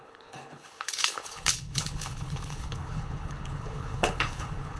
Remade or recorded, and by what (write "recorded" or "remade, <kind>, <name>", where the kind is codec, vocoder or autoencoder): remade, codec, HILCodec